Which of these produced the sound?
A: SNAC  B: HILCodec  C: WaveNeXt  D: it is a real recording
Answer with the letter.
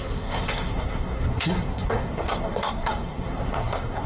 A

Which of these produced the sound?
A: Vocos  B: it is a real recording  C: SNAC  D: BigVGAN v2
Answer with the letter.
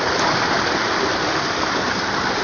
B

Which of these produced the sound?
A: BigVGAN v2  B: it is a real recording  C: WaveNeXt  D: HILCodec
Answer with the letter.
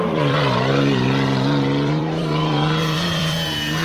A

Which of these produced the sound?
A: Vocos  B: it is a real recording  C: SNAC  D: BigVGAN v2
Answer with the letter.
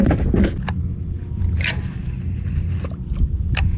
D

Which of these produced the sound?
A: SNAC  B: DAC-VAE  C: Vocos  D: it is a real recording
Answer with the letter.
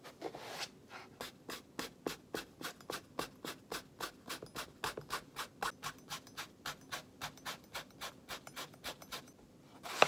D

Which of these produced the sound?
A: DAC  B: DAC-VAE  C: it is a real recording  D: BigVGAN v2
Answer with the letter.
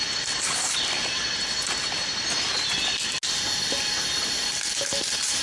C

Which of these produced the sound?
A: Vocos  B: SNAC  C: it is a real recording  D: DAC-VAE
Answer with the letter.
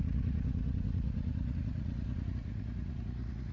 A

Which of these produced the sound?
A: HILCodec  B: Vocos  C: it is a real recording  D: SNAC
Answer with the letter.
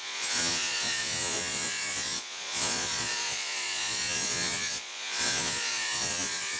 B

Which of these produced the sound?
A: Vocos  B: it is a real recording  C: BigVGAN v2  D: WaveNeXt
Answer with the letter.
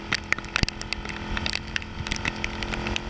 B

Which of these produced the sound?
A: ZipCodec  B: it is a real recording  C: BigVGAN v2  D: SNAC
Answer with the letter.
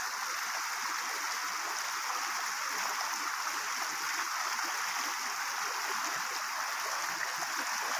B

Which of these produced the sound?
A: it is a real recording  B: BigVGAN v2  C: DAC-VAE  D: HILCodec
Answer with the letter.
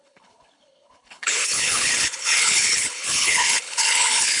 D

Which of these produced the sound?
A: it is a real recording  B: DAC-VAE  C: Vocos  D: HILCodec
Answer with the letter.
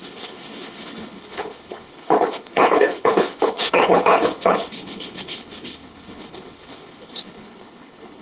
D